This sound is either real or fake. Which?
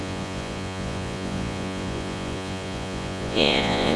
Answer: fake